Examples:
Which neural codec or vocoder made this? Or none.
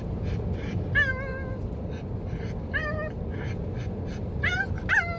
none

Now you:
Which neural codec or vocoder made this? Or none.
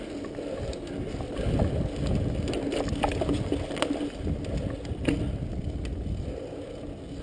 none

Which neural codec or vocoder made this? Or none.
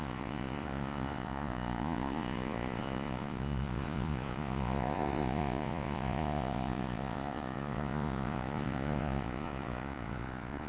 vocoder, Vocos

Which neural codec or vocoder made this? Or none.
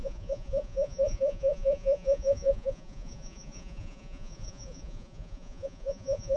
vocoder, Vocos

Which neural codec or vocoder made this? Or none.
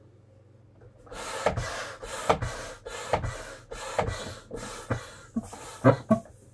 none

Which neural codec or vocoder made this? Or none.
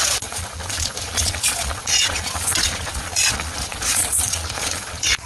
vocoder, Vocos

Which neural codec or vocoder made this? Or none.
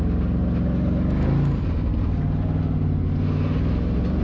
none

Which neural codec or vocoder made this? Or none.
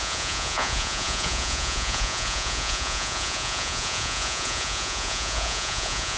vocoder, Vocos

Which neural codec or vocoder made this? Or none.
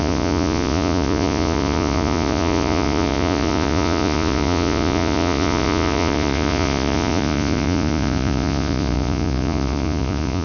vocoder, Vocos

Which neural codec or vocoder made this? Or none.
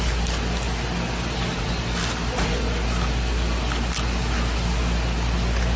none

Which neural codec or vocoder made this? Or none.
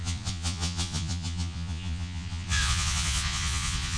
vocoder, Vocos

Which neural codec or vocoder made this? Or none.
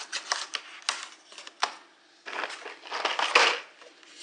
none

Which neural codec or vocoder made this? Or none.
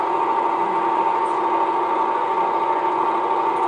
vocoder, Vocos